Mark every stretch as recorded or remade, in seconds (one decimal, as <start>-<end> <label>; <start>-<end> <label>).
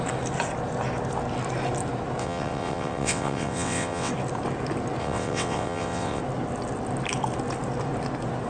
0.0-2.2 recorded; 2.2-4.1 remade; 4.1-5.0 recorded; 5.0-6.2 remade; 6.2-8.5 recorded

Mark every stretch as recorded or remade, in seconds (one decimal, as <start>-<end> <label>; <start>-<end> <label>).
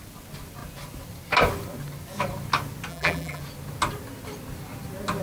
0.0-2.9 recorded; 2.9-3.4 remade; 3.4-5.2 recorded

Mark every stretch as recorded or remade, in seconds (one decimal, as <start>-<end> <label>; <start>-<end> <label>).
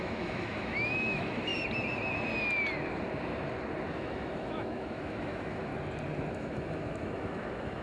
0.0-1.5 remade; 1.5-3.9 recorded; 3.9-5.7 remade; 5.7-6.3 recorded; 6.3-7.8 remade